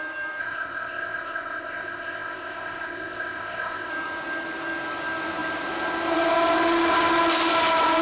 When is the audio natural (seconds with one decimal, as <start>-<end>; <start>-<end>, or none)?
0.0-0.4; 3.9-8.0